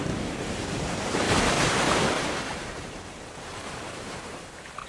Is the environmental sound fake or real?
fake